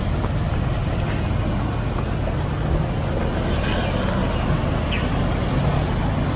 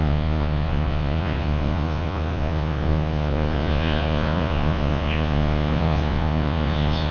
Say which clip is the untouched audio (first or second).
first